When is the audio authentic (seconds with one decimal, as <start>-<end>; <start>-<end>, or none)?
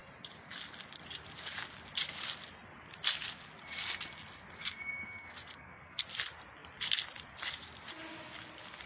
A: 0.0-4.6; 6.0-8.9